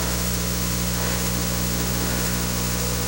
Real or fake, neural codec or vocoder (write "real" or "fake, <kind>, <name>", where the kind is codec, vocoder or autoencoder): fake, autoencoder, DAC-VAE